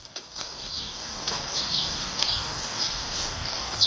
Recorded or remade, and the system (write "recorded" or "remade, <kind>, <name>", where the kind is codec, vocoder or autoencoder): remade, codec, DAC